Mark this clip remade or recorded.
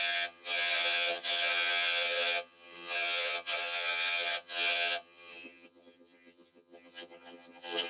remade